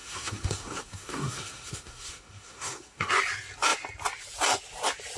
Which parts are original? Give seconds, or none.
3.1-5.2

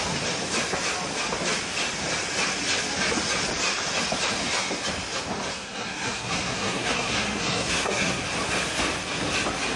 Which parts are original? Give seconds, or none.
0.0-5.5; 8.2-9.8

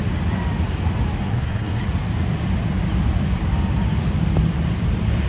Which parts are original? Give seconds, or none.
0.0-1.2; 1.8-5.3

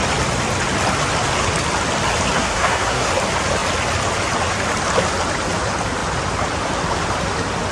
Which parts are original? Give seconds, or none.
0.0-2.4; 3.1-7.7

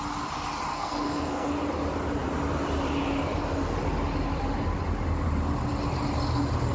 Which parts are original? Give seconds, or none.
0.0-0.7; 1.5-6.7

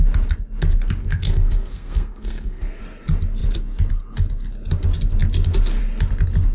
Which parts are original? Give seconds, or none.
0.0-1.0; 2.8-6.5

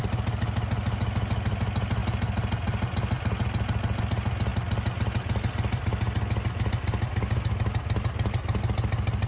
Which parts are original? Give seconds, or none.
0.0-9.3

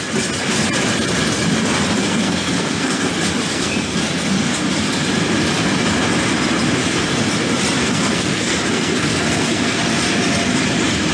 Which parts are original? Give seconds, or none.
0.0-2.0; 3.1-3.5; 4.0-7.8; 9.8-11.1